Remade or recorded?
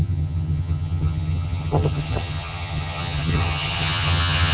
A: remade